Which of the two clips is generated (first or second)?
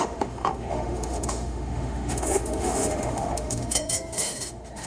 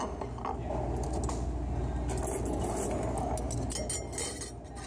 first